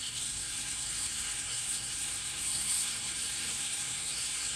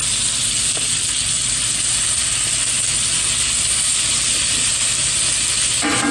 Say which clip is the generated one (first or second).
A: first